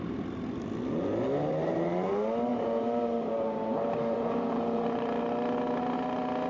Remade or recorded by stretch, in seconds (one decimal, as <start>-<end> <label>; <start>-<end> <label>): 0.0-1.5 recorded; 1.5-2.1 remade; 2.1-2.5 recorded; 2.5-5.2 remade; 5.2-6.5 recorded